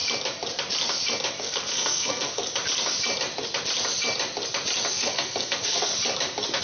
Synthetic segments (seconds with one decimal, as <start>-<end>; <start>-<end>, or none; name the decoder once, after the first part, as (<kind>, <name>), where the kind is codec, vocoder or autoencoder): 1.4-2.4 (codec, SNAC); 4.9-5.9